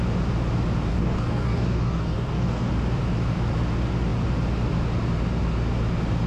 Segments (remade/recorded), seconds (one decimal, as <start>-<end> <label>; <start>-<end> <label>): 0.0-0.9 recorded; 0.9-2.7 remade; 2.7-6.3 recorded